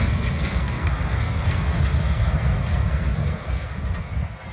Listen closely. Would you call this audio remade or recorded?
remade